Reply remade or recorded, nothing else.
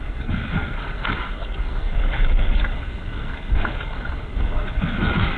remade